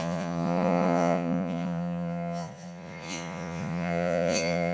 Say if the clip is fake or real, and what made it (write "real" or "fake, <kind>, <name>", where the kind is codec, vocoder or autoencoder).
fake, vocoder, Vocos